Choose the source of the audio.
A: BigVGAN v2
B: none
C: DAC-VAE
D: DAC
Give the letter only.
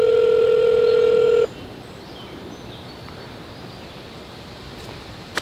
A